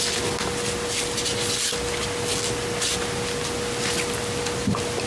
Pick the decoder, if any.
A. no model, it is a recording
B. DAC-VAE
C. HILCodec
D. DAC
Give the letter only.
A